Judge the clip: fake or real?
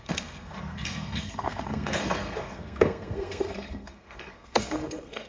fake